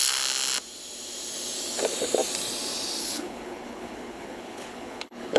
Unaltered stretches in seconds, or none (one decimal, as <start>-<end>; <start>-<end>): 0.0-3.0